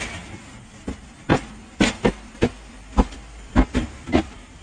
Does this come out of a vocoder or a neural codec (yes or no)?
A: no